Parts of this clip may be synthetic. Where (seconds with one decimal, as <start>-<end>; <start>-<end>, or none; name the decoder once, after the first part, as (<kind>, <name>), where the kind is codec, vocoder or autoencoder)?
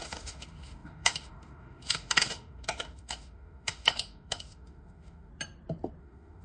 0.0-5.3 (autoencoder, DAC-VAE); 6.0-6.4